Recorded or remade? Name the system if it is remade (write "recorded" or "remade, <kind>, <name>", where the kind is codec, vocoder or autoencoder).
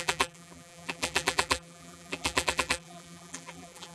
remade, vocoder, BigVGAN v2